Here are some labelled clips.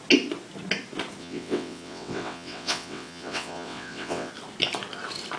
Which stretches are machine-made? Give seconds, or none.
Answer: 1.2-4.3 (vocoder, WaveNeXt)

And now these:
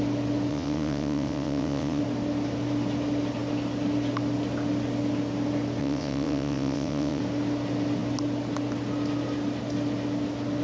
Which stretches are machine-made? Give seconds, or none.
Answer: 0.5-2.0 (vocoder, WaveNeXt); 5.8-7.2